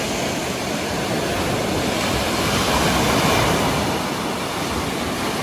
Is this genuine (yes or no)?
yes